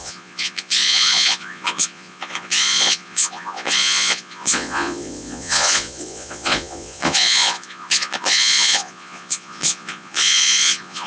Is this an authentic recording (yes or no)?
no